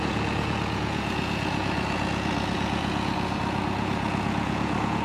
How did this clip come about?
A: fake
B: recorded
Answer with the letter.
A